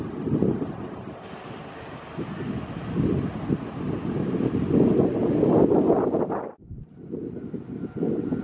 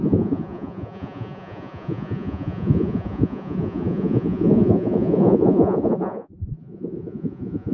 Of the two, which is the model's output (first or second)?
second